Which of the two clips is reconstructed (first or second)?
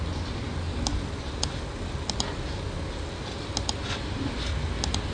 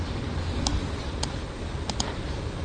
second